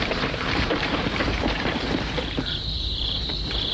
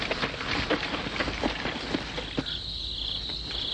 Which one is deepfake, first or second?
first